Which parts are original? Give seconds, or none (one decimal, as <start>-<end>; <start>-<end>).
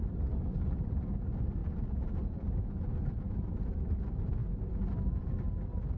0.0-1.6; 3.8-6.0